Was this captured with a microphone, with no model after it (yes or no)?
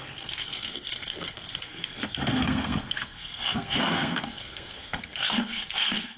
no